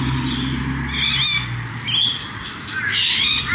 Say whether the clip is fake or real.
real